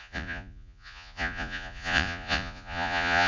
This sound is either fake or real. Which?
fake